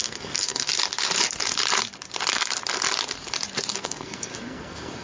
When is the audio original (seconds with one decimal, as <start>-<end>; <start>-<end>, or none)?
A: 0.7-3.7